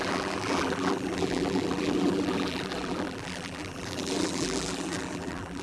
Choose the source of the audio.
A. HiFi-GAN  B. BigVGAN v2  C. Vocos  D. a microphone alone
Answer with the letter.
B